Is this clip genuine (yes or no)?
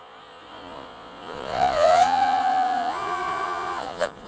no